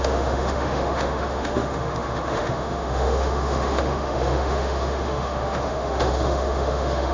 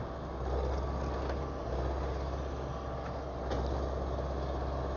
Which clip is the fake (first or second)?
first